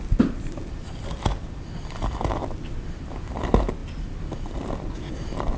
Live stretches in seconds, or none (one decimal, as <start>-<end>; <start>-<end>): 0.0-5.6